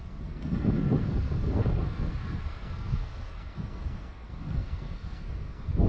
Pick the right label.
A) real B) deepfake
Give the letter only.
B